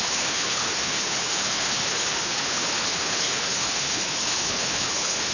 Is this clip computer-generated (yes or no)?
yes